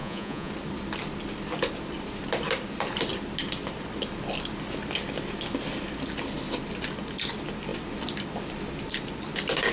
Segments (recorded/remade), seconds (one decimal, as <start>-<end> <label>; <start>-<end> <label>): 0.0-0.5 remade; 0.5-9.7 recorded